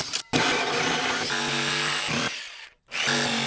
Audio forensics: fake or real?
real